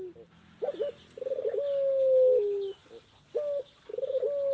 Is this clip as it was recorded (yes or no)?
yes